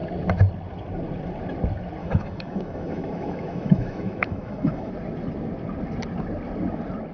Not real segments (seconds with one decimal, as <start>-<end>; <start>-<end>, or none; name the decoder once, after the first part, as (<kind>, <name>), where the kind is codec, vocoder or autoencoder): 2.0-4.9 (autoencoder, DAC-VAE)